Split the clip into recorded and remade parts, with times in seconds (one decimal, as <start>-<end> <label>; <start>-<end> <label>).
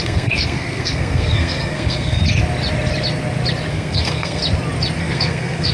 0.0-2.2 remade; 2.2-3.7 recorded; 3.7-4.4 remade; 4.4-5.0 recorded; 5.0-5.7 remade